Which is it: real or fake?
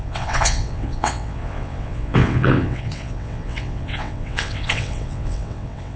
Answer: fake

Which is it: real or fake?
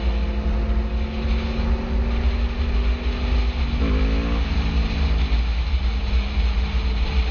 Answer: real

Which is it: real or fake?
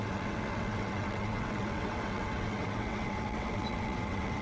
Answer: fake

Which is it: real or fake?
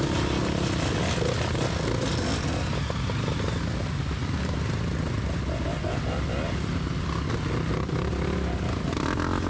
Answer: real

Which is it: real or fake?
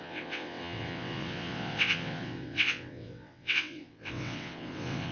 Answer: fake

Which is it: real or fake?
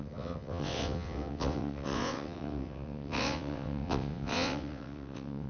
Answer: fake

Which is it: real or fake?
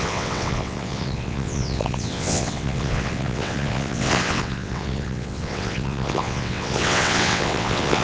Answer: fake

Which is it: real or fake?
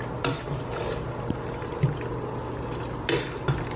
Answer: real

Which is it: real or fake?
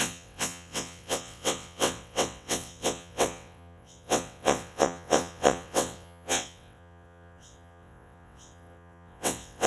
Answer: fake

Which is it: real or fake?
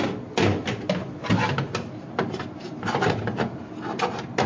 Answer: real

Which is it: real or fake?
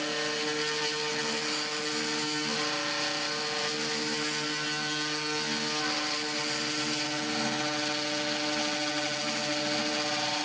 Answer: real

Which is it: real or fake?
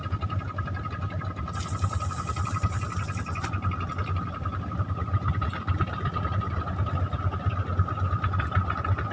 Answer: real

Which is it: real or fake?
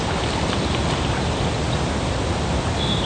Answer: real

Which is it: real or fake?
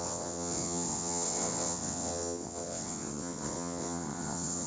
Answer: fake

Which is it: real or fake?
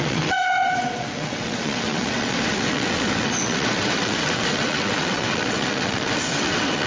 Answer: fake